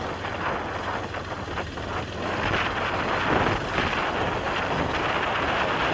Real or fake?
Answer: real